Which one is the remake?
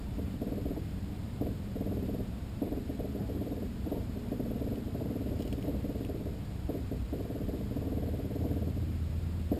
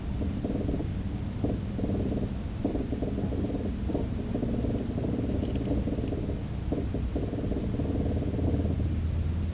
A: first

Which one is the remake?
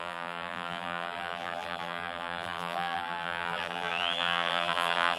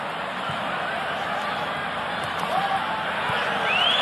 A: first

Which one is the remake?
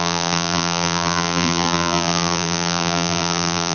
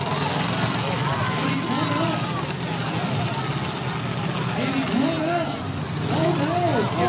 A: first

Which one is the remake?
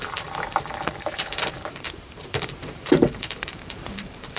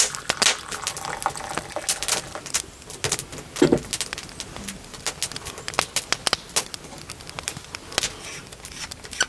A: first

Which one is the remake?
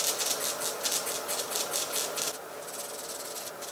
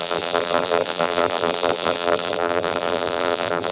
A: second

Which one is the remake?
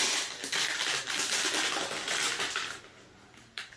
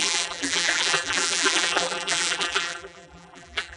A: second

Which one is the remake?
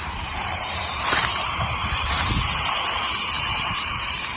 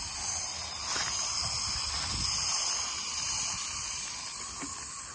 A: first